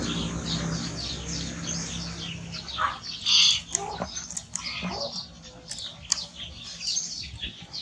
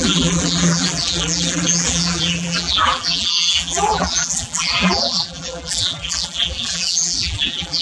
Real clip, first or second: first